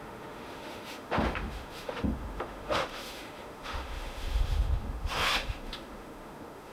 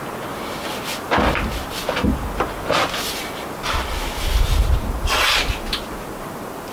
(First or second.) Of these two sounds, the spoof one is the first